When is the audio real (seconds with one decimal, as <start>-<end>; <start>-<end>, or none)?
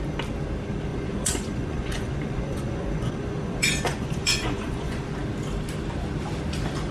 0.0-0.9; 5.0-6.9